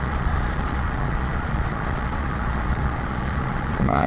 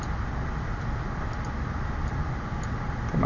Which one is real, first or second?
second